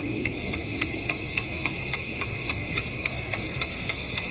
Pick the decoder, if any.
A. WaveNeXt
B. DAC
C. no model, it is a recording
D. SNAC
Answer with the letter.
D